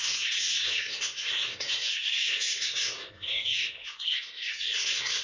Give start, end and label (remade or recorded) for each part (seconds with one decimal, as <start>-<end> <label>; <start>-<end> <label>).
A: 0.0-5.2 remade